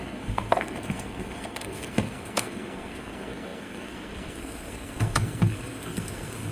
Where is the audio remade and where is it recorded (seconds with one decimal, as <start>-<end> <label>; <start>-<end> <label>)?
0.0-6.5 remade